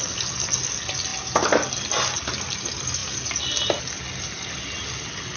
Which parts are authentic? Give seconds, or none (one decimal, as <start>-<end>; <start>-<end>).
0.0-5.4